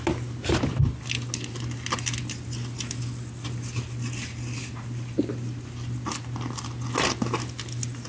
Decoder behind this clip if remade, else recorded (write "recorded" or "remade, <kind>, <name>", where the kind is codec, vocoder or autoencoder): recorded